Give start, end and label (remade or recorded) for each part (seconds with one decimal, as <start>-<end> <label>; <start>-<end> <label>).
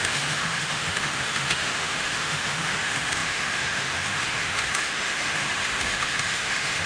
0.0-6.9 remade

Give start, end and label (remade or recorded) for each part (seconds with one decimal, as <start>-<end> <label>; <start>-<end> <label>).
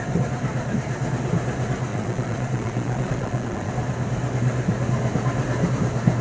0.0-1.9 recorded; 1.9-3.7 remade; 3.7-6.2 recorded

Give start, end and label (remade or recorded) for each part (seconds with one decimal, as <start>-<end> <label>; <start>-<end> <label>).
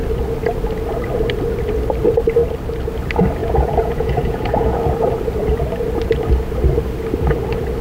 0.0-3.4 recorded; 3.4-4.8 remade; 4.8-7.8 recorded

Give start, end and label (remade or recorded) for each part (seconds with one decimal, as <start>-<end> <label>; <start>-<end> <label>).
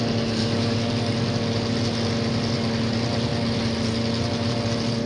0.0-0.4 recorded; 0.4-0.9 remade; 0.9-5.1 recorded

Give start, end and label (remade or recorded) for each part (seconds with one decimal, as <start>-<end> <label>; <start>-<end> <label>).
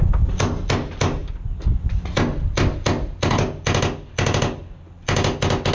0.0-5.7 recorded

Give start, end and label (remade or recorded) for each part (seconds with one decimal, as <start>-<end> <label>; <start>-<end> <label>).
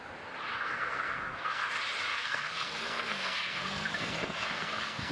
0.0-0.5 recorded; 0.5-1.7 remade; 1.7-2.1 recorded; 2.1-5.1 remade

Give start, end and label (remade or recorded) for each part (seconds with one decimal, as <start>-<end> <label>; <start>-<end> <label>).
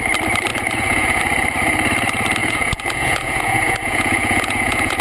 0.0-0.5 recorded; 0.5-1.2 remade; 1.2-2.4 recorded; 2.4-5.0 remade